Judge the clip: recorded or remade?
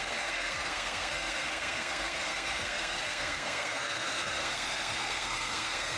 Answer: remade